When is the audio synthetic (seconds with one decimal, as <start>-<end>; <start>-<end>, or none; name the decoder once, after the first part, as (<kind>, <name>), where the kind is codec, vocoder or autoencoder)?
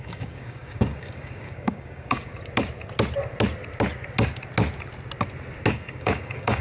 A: 0.0-2.3 (codec, DAC); 5.7-6.6